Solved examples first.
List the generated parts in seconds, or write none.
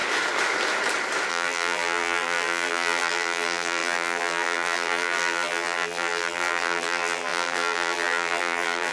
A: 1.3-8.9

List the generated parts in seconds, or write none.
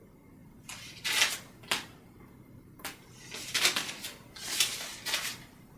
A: none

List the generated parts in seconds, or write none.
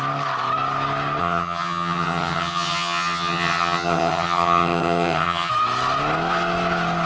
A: 1.2-5.5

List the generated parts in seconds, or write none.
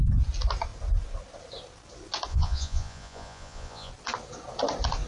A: 2.3-3.9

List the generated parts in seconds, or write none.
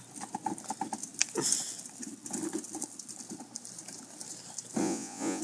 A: 4.8-5.4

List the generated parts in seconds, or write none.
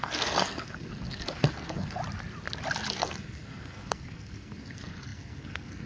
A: 0.0-2.0; 2.9-5.9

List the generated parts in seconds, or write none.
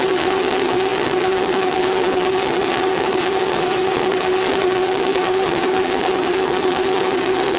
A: 0.0-7.6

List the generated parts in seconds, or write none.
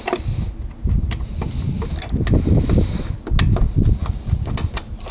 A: none